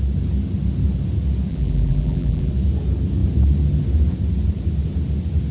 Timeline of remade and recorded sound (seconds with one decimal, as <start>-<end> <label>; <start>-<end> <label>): 0.0-1.5 recorded; 1.5-2.5 remade; 2.5-5.5 recorded